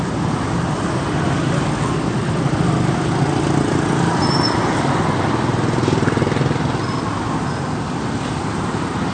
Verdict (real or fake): real